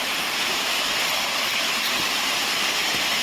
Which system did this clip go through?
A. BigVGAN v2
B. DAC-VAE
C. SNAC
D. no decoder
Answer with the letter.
A